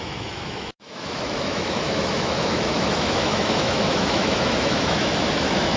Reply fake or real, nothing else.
fake